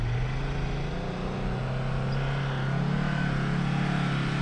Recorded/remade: recorded